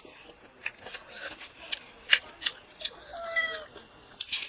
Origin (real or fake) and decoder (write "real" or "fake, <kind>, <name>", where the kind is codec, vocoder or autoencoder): real